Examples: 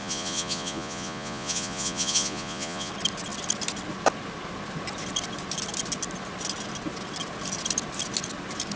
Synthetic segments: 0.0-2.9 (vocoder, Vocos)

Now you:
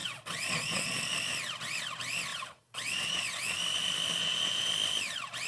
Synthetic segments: 0.0-1.0 (vocoder, Vocos); 2.3-3.6; 4.2-4.7

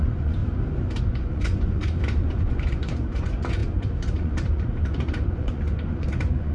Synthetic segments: 0.0-0.4 (vocoder, Vocos); 1.0-6.5

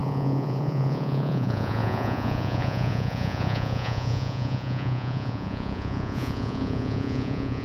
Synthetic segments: 0.0-7.6 (vocoder, Vocos)

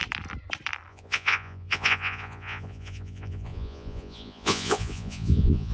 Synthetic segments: 0.9-5.7 (vocoder, Vocos)

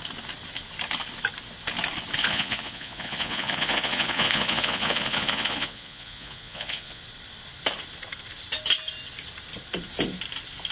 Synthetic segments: 2.2-7.0 (vocoder, Vocos)

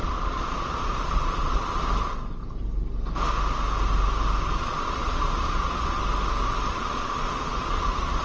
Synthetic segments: 0.0-1.8 (vocoder, Vocos); 4.6-6.0; 6.7-8.2

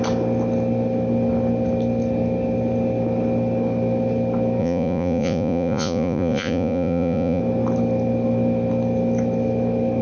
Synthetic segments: 4.6-7.4 (vocoder, Vocos)